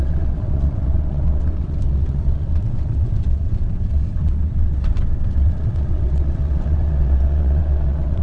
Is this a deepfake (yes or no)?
yes